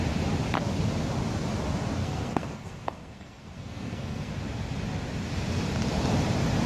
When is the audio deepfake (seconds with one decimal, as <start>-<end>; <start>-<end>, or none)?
2.0-4.3